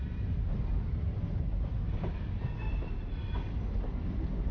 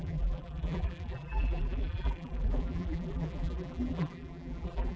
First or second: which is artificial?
second